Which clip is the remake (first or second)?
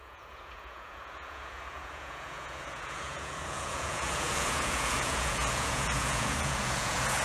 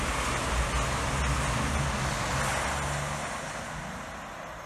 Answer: first